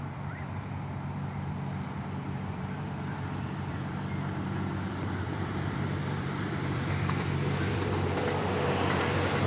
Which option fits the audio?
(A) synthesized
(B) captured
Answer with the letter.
A